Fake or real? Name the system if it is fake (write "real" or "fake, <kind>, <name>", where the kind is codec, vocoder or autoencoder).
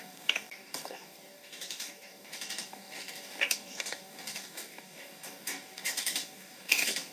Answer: fake, codec, DAC